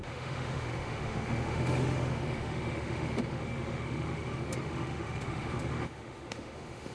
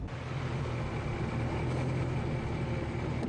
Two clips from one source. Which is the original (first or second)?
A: second